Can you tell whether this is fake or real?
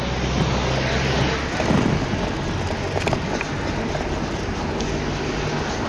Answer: real